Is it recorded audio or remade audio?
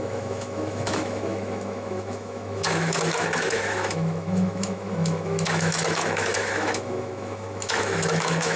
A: remade